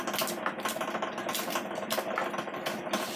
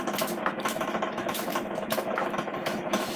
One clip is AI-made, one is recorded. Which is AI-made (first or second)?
second